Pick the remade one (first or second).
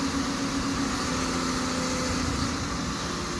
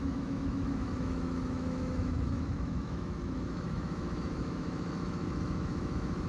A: second